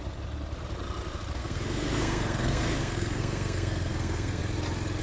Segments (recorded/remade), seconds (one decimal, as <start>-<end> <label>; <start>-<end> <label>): 0.0-1.4 recorded; 1.4-4.4 remade; 4.4-5.0 recorded